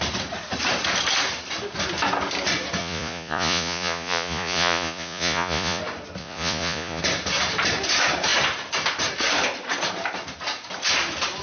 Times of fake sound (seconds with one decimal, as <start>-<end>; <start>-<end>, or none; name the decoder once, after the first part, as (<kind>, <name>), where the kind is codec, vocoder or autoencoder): 2.8-5.8 (vocoder, Vocos); 6.2-7.0